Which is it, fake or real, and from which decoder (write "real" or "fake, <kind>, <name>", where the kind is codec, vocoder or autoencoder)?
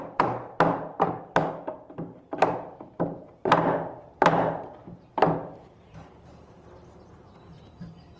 fake, vocoder, BigVGAN v2